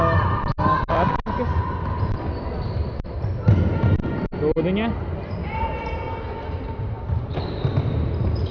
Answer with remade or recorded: recorded